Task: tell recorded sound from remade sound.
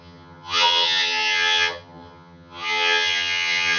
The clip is remade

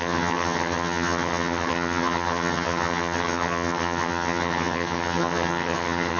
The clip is remade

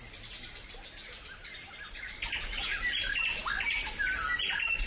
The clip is recorded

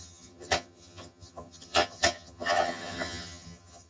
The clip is remade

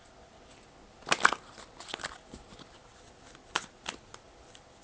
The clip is recorded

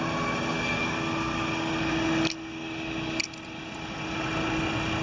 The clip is recorded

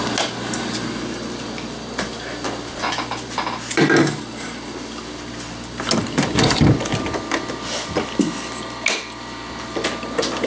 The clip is recorded